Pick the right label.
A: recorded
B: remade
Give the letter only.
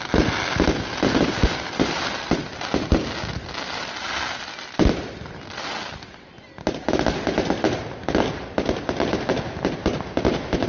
A